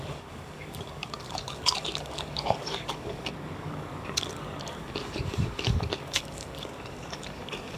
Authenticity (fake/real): fake